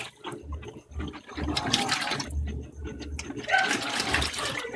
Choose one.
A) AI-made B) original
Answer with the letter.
B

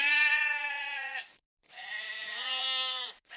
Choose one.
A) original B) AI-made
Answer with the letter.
B